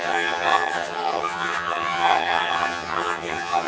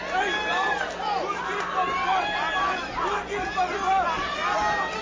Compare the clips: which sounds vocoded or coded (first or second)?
first